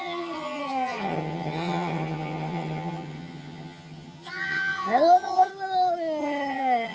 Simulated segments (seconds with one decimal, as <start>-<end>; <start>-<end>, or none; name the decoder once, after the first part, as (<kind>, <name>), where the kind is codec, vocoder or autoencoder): 0.0-5.5 (vocoder, HiFi-GAN); 6.2-6.9